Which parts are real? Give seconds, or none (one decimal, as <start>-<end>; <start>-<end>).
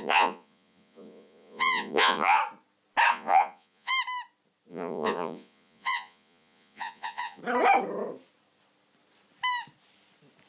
2.4-3.1; 3.9-4.7; 7.4-10.5